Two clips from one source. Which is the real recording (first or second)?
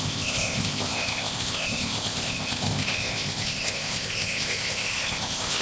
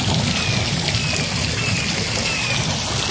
second